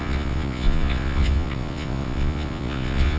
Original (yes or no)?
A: no